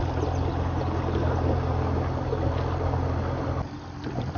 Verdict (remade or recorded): recorded